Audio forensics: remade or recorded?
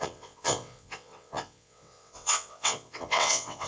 remade